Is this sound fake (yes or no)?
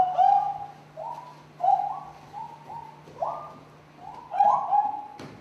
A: no